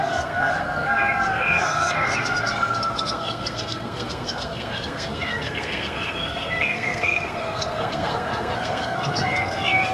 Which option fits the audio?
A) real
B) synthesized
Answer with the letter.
B